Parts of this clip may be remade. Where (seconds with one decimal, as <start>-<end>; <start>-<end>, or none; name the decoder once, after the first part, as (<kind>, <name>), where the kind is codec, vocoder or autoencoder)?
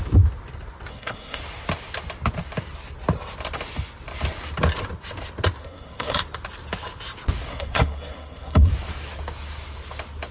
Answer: 0.9-1.4 (codec, SNAC); 5.6-6.2; 7.5-8.7